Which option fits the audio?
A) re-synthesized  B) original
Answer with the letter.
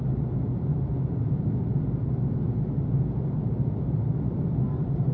B